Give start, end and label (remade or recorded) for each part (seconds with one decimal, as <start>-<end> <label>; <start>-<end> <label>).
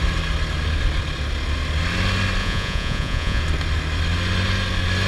0.0-2.4 recorded; 2.4-3.4 remade; 3.4-5.1 recorded